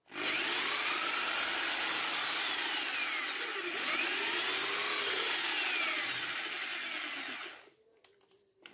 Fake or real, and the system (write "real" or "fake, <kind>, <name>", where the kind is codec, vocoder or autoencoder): real